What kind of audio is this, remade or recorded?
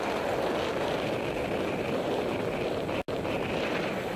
recorded